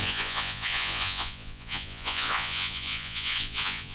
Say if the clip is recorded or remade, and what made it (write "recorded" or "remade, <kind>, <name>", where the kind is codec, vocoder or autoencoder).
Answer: remade, vocoder, Vocos